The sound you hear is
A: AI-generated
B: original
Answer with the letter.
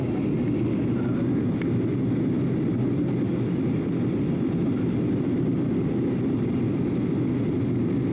B